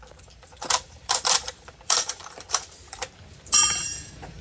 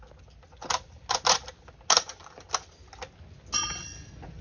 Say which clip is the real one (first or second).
second